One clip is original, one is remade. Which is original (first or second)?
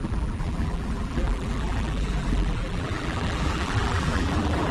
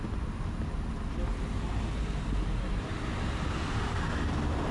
second